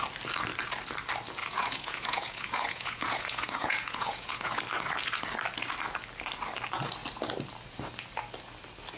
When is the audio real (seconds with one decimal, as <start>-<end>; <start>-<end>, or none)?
0.0-1.4; 4.6-9.0